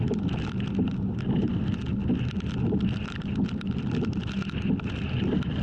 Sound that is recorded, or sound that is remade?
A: recorded